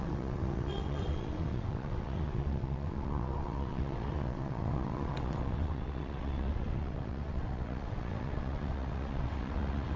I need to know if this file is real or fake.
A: fake